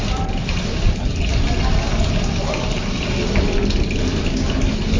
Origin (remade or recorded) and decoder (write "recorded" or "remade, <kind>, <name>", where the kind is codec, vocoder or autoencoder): recorded